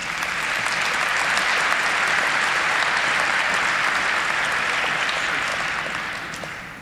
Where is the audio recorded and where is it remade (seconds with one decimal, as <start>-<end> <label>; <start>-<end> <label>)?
0.0-6.8 recorded